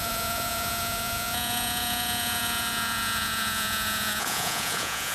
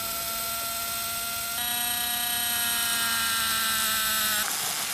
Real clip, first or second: second